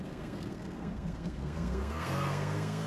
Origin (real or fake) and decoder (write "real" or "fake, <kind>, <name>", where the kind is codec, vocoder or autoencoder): fake, codec, SNAC